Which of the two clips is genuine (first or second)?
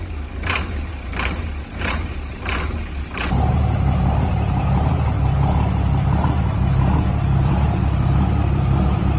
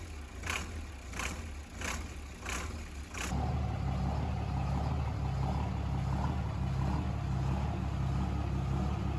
second